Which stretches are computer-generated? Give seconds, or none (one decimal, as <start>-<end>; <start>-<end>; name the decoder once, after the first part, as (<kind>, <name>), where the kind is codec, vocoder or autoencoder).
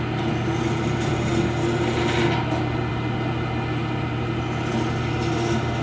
none